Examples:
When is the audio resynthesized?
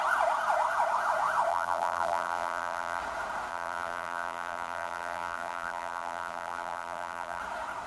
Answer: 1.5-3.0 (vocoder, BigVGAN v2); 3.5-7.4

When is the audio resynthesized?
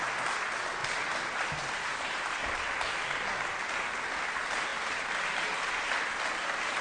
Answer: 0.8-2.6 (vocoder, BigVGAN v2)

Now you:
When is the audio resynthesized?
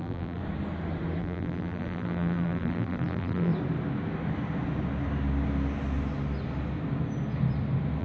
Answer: 0.0-0.4 (vocoder, BigVGAN v2); 1.2-3.5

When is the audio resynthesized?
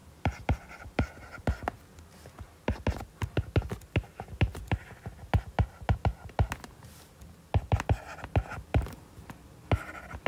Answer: 0.0-1.4 (vocoder, BigVGAN v2); 8.7-9.3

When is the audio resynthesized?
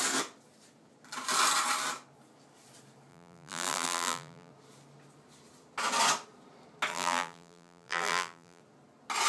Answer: 3.1-4.5 (vocoder, BigVGAN v2); 6.9-8.6